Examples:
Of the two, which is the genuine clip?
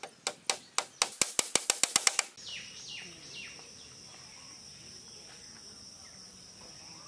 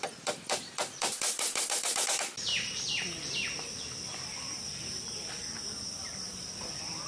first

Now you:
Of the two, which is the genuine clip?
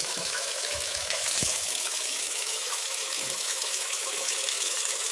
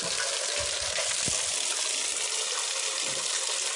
second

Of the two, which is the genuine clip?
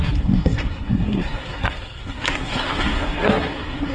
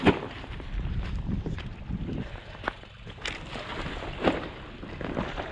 second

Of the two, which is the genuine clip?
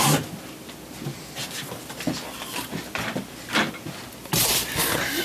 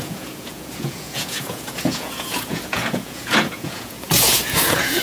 first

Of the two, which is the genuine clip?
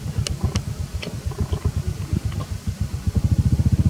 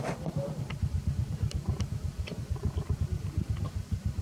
first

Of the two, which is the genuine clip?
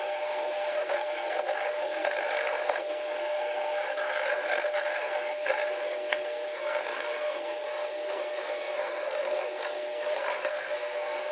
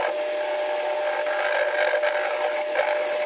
second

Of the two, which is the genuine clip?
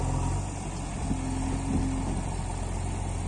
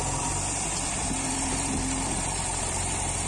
first